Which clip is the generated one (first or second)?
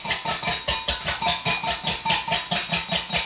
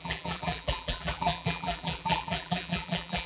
second